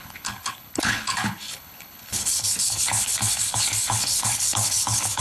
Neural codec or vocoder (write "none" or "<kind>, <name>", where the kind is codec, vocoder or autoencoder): codec, HILCodec